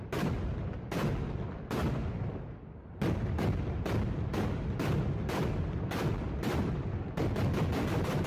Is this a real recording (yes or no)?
yes